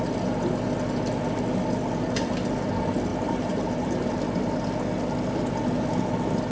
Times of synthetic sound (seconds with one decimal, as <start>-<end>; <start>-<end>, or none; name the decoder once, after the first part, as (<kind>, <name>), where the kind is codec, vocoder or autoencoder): 3.1-4.1 (vocoder, BigVGAN v2)